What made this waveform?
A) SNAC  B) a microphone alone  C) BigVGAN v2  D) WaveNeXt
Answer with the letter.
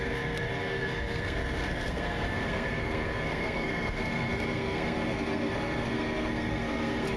A